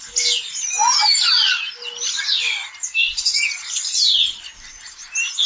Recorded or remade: recorded